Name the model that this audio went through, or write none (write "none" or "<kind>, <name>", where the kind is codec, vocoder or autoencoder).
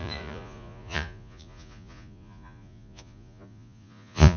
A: vocoder, Vocos